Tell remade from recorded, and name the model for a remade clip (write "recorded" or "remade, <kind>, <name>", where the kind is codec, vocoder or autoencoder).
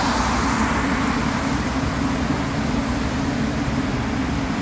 recorded